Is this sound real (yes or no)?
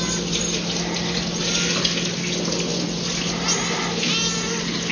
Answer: yes